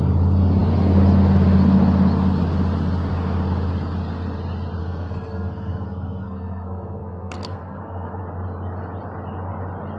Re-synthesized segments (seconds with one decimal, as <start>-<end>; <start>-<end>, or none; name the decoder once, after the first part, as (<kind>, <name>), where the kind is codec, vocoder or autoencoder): 4.8-8.2 (codec, SNAC)